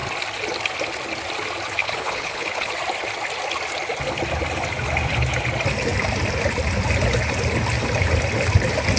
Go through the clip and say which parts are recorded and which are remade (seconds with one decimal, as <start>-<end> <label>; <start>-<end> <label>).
0.0-1.8 recorded; 1.8-2.7 remade; 2.7-9.0 recorded